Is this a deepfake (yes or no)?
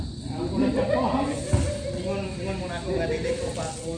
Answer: no